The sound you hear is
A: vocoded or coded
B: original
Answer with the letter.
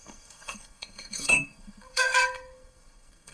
A